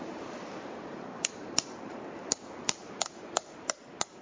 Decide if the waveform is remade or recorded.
remade